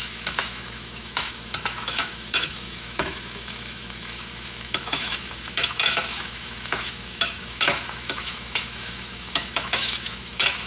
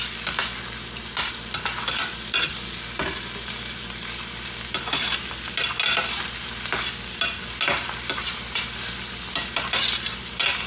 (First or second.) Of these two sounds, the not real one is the first